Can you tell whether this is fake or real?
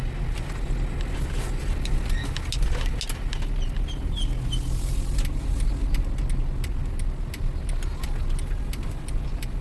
real